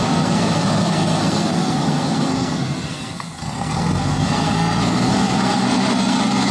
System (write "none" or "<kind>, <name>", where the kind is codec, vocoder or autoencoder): codec, SNAC